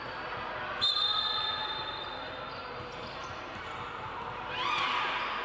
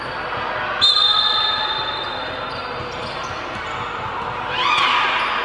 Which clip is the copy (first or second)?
first